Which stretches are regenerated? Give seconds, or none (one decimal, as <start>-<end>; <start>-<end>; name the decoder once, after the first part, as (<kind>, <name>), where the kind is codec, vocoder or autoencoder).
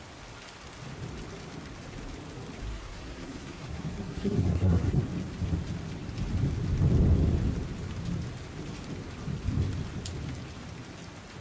2.7-5.0 (codec, SNAC)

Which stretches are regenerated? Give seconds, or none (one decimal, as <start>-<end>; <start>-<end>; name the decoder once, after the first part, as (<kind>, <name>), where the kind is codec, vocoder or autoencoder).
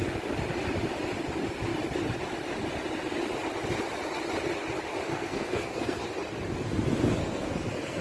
5.1-6.0 (codec, SNAC); 7.2-8.0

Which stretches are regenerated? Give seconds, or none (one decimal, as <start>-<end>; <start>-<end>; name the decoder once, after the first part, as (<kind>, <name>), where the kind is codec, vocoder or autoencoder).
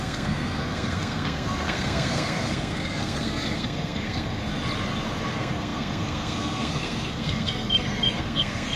0.0-4.5 (codec, SNAC); 5.3-8.8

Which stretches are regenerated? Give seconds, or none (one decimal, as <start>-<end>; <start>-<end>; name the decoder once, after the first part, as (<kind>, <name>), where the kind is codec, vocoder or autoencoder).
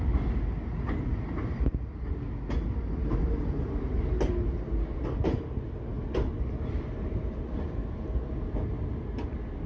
none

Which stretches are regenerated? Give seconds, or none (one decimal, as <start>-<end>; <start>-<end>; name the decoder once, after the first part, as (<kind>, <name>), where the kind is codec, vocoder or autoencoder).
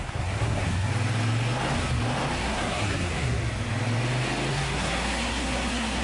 0.0-0.9 (codec, SNAC); 2.4-3.4; 4.5-6.0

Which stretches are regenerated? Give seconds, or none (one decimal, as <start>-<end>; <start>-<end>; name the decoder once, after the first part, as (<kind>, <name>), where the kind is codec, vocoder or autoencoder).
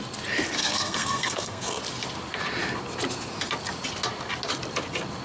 0.6-1.8 (codec, SNAC)